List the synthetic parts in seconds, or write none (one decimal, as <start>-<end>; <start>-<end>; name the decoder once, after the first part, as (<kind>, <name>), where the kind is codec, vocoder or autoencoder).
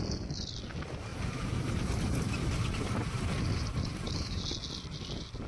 1.1-4.4 (vocoder, BigVGAN v2)